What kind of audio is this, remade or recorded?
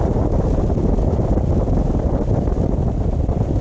recorded